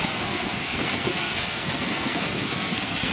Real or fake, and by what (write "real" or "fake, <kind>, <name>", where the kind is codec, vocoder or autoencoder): fake, codec, SNAC